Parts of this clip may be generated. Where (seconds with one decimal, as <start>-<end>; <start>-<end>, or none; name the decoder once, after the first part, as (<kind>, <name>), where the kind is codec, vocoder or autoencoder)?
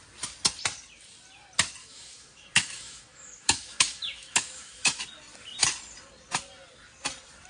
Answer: 1.8-5.0 (autoencoder, DAC-VAE)